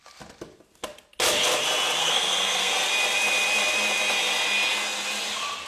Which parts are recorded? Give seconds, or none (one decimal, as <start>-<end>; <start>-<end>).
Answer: 0.0-2.0; 2.7-5.7